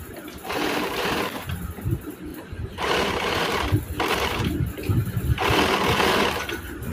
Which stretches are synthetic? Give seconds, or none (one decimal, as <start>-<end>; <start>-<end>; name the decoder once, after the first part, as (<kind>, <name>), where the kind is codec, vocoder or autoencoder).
0.0-1.1 (vocoder, BigVGAN v2); 2.3-3.8